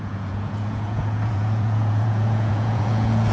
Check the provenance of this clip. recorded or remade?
remade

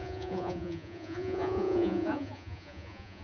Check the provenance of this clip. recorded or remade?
remade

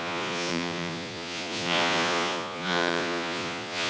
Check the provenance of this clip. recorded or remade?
remade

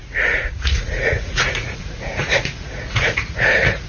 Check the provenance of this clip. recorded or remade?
remade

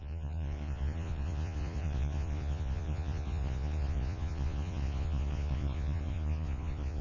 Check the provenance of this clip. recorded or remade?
remade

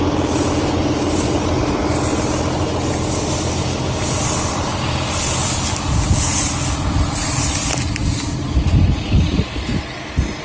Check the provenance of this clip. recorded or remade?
recorded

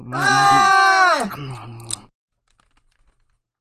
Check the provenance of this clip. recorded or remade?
recorded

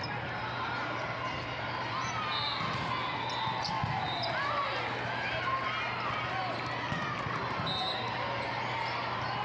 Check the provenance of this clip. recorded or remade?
recorded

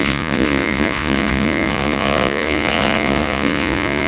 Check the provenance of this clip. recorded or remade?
remade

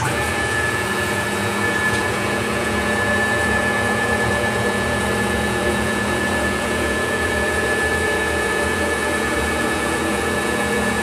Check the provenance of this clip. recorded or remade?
remade